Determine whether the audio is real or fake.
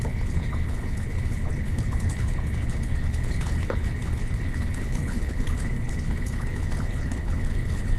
fake